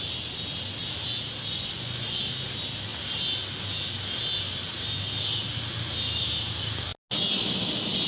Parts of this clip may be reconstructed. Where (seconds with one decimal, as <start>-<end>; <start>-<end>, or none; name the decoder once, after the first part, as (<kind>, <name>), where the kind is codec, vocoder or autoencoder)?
1.5-2.2 (vocoder, Vocos)